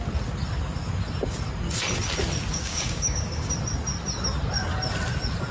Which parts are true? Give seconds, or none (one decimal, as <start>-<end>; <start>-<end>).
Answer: 0.0-2.5; 3.5-5.5